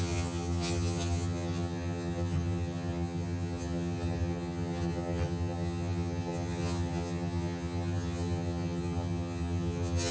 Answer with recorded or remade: remade